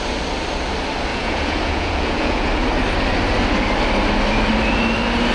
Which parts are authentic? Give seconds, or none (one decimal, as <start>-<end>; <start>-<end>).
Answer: 0.0-1.1; 2.5-5.3